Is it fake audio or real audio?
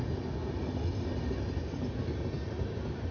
real